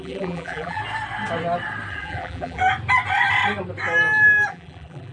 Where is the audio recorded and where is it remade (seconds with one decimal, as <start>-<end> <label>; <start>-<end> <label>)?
0.0-0.8 remade; 0.8-1.9 recorded; 1.9-2.6 remade; 2.6-4.5 recorded; 4.5-5.1 remade

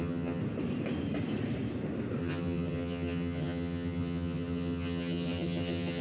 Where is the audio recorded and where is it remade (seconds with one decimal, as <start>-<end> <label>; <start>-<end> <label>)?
0.0-0.4 remade; 0.4-2.2 recorded; 2.2-6.0 remade